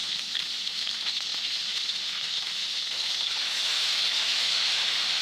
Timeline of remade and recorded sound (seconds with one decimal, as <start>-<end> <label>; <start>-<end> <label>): 0.0-5.2 remade